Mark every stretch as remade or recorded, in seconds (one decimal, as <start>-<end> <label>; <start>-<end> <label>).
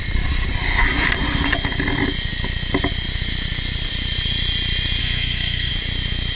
0.0-5.0 recorded; 5.0-5.7 remade; 5.7-6.3 recorded